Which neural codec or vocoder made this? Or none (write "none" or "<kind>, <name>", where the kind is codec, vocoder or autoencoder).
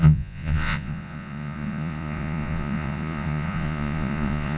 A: vocoder, Vocos